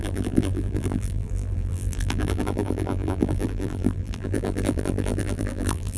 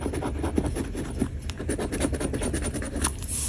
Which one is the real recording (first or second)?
second